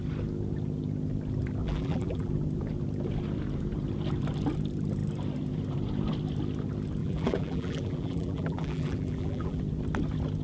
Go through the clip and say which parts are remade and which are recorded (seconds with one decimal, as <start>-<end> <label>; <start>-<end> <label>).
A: 0.0-1.6 recorded; 1.6-2.3 remade; 2.3-7.0 recorded; 7.0-9.6 remade; 9.6-10.4 recorded